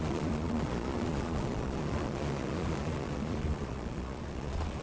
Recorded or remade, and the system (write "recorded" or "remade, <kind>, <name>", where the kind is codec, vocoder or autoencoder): remade, vocoder, Vocos